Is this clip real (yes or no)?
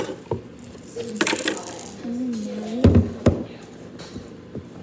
yes